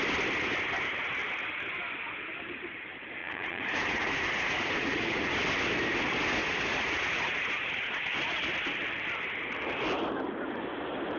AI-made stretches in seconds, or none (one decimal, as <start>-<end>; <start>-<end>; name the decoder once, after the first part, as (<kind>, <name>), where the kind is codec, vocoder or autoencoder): 3.2-5.3 (vocoder, Vocos); 6.4-8.4